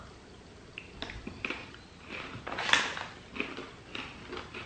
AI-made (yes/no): no